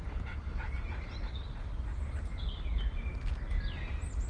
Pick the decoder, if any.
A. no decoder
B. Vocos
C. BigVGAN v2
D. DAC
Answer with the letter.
A